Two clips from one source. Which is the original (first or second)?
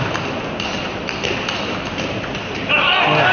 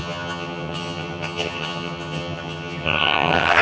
first